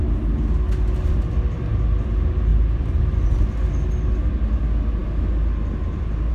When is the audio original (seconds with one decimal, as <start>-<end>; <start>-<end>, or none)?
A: 0.0-2.5; 3.0-6.3